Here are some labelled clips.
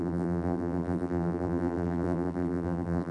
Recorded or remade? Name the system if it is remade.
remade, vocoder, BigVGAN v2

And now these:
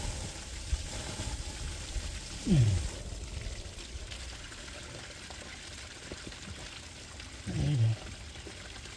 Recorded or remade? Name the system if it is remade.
recorded